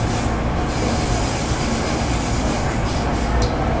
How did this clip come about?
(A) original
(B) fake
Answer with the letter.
A